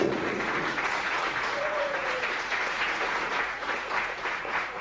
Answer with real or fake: fake